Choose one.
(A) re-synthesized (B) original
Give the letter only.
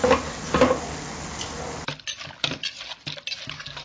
B